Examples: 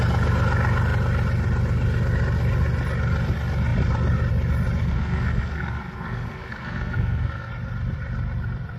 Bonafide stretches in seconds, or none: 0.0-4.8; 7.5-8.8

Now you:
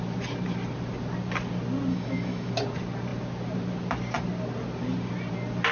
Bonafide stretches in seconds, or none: 0.0-1.9; 2.5-5.7

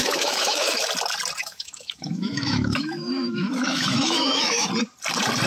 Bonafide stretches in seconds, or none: 0.9-1.4; 4.7-5.5

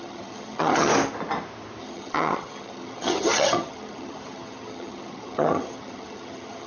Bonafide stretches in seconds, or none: 0.9-1.8

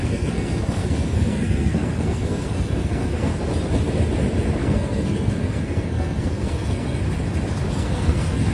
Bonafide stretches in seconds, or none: 3.3-4.6; 7.0-7.7